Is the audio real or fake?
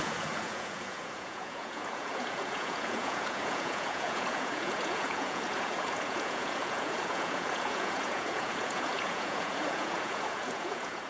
fake